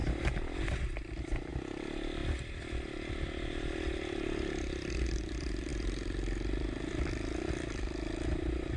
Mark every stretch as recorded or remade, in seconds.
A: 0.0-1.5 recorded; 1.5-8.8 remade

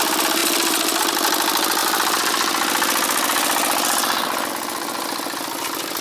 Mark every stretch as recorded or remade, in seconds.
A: 0.0-0.4 recorded; 0.4-1.0 remade; 1.0-1.8 recorded; 1.8-4.5 remade; 4.5-6.0 recorded